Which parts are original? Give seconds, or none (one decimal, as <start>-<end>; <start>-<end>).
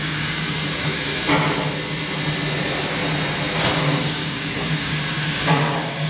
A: 1.1-3.6